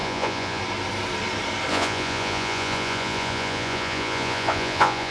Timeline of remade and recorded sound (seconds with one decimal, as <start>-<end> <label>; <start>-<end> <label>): 0.0-0.6 remade; 0.6-1.7 recorded; 1.7-5.1 remade